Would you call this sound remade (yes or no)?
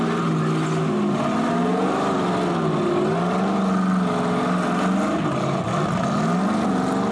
no